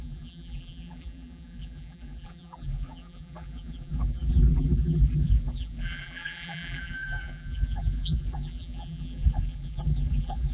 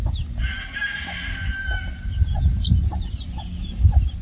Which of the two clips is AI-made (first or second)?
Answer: first